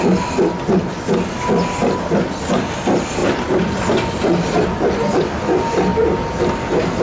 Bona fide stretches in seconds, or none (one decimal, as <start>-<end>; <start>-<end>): 0.0-1.8; 2.5-7.0